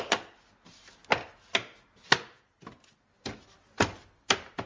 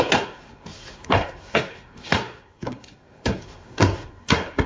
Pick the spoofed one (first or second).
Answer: second